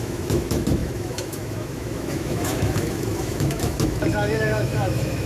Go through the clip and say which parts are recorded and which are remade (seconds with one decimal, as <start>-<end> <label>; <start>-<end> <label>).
0.0-5.3 remade